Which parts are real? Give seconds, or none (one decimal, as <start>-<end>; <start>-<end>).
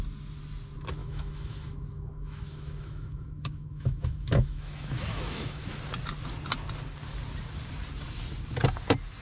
0.0-1.0; 5.8-9.2